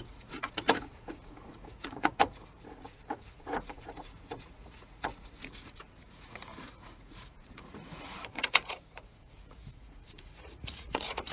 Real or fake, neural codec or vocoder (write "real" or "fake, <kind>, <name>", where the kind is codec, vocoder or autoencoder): fake, vocoder, Vocos